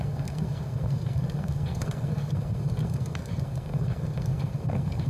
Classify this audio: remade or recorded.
remade